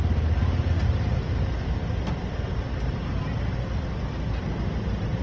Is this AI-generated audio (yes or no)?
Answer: no